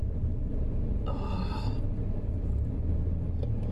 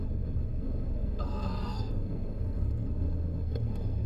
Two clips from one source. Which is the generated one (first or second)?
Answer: second